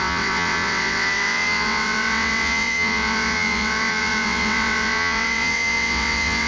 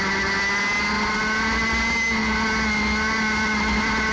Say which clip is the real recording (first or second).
second